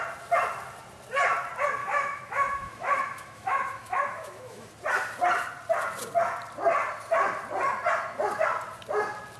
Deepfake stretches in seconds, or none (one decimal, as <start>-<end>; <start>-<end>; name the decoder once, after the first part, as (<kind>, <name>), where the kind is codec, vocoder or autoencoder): 1.8-4.7 (autoencoder, DAC-VAE)